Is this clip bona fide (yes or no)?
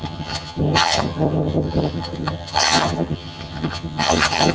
no